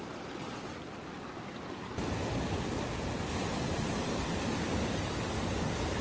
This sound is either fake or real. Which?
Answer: real